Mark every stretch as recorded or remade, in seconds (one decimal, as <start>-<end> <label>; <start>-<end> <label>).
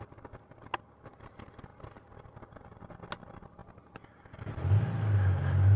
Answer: 0.0-5.8 recorded